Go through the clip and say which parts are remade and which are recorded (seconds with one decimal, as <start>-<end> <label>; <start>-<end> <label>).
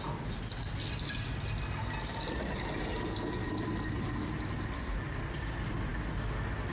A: 0.0-6.7 recorded